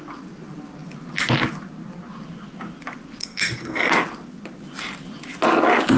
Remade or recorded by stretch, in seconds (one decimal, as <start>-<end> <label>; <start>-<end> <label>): 0.0-3.2 recorded; 3.2-3.9 remade; 3.9-6.0 recorded